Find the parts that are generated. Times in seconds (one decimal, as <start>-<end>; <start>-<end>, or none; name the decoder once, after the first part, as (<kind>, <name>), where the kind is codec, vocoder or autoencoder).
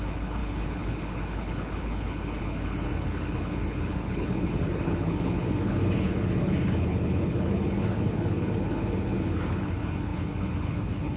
0.0-11.2 (codec, HILCodec)